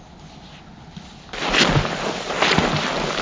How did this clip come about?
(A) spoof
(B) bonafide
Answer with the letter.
B